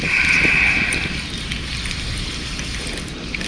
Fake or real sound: real